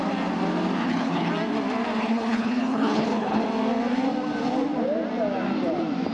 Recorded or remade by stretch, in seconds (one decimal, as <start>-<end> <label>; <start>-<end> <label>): 0.0-0.8 recorded; 0.8-1.3 remade; 1.3-2.0 recorded; 2.0-3.4 remade; 3.4-6.1 recorded